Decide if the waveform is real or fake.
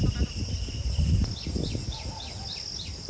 real